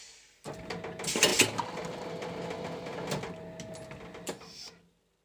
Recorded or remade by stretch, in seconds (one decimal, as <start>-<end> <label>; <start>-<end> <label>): 0.0-5.2 recorded